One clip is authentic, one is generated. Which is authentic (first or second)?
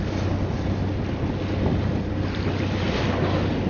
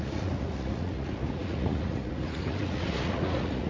first